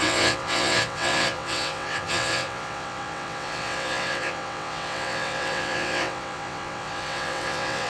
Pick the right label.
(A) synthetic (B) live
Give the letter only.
A